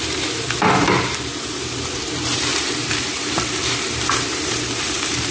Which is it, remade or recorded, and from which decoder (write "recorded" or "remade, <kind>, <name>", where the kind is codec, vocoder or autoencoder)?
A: remade, vocoder, BigVGAN v2